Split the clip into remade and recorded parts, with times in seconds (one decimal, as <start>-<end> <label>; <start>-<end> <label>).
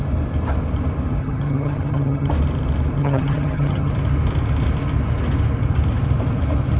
0.0-1.2 recorded; 1.2-2.3 remade; 2.3-3.0 recorded; 3.0-3.9 remade; 3.9-6.8 recorded